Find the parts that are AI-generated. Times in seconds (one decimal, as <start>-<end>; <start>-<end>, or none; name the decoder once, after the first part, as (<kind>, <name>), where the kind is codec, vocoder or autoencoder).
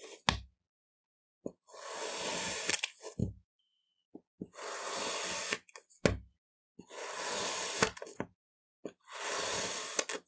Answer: 3.2-3.9 (autoencoder, DAC-VAE)